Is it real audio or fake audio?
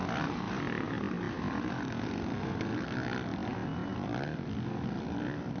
real